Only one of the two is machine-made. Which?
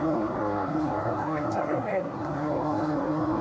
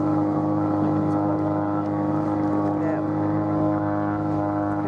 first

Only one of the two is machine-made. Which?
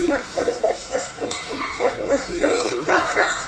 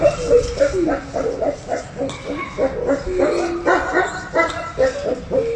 first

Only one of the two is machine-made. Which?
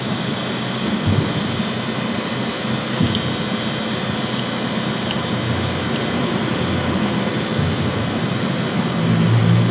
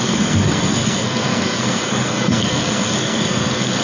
second